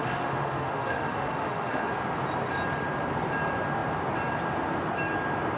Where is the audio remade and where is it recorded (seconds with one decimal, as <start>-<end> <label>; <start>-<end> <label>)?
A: 0.0-1.9 remade; 1.9-5.6 recorded